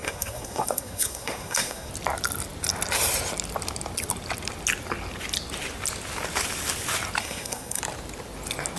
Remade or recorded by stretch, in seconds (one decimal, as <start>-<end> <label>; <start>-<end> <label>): 0.0-1.9 remade; 1.9-7.2 recorded; 7.2-7.8 remade; 7.8-8.8 recorded